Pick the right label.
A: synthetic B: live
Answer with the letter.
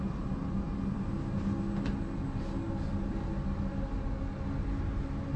B